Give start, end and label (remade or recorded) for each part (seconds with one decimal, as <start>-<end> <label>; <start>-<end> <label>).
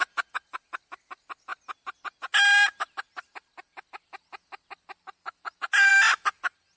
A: 0.0-6.8 recorded